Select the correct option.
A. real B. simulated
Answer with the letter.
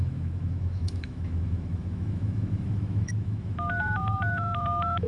B